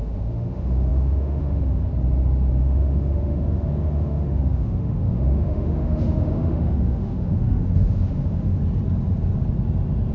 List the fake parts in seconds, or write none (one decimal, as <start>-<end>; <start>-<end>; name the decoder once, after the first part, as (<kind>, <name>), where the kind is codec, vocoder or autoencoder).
0.0-1.9 (autoencoder, DAC-VAE); 2.6-8.6